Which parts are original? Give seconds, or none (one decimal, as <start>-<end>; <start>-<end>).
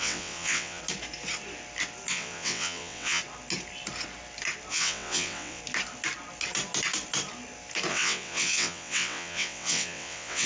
0.8-2.1; 3.2-4.7; 5.6-7.9